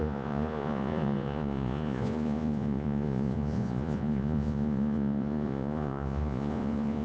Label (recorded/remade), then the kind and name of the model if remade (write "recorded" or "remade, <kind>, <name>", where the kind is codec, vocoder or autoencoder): remade, vocoder, Vocos